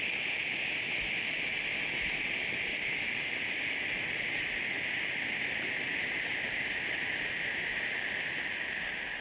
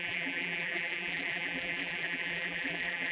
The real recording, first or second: first